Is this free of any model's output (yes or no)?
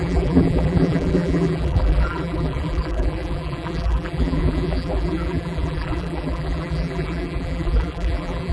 no